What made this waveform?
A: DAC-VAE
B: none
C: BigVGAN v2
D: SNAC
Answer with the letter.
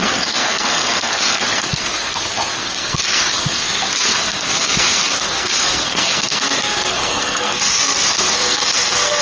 D